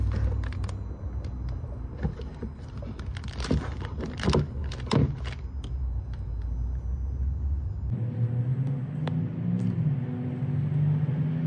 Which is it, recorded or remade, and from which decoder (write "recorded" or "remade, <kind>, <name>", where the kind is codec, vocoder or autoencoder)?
recorded